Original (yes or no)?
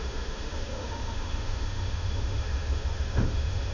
no